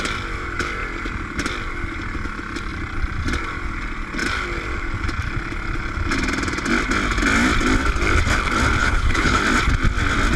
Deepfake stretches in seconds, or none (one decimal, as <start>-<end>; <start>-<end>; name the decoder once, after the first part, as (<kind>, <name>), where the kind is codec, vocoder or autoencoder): 8.8-9.4 (codec, HILCodec)